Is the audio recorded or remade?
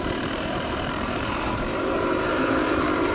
remade